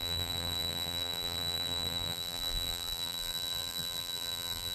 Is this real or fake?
fake